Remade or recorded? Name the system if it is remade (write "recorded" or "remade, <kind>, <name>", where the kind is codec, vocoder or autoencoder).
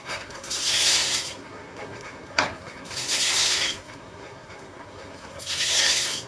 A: remade, codec, SNAC